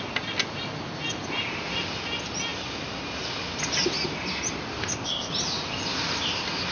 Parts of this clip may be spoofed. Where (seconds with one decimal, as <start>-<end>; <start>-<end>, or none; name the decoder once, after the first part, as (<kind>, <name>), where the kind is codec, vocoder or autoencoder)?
4.8-5.3 (codec, ZipCodec)